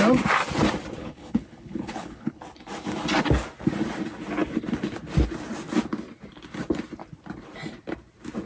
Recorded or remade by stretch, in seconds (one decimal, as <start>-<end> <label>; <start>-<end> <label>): 0.0-1.0 recorded; 1.0-2.4 remade; 2.4-8.5 recorded